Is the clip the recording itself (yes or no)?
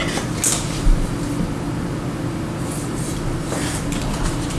yes